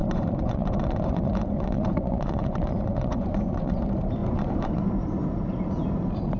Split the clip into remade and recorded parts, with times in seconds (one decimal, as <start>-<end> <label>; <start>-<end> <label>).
0.0-3.8 remade; 3.8-4.2 recorded; 4.2-4.9 remade; 4.9-6.4 recorded